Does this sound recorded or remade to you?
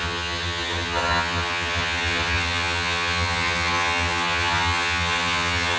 remade